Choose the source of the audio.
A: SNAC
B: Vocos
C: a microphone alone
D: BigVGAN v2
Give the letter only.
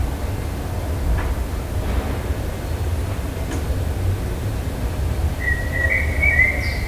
C